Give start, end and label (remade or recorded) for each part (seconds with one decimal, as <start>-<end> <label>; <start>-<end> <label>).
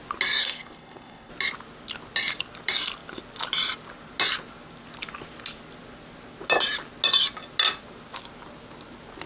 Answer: 0.0-0.4 recorded; 0.4-1.3 remade; 1.3-9.3 recorded